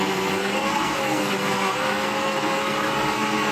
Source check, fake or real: fake